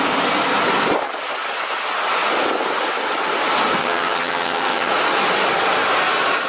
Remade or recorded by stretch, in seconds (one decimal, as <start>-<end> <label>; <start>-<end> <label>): 0.0-3.8 recorded; 3.8-4.9 remade; 4.9-6.5 recorded